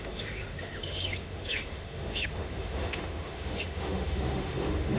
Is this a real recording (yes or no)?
no